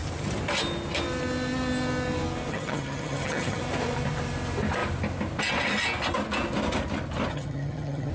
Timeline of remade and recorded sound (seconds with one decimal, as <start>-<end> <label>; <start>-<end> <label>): 0.0-2.5 recorded; 2.5-3.6 remade; 3.6-7.3 recorded; 7.3-8.1 remade